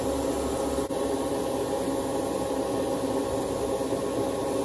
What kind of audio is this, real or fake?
real